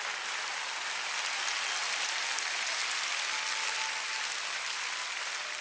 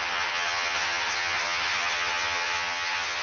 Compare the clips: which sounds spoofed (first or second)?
second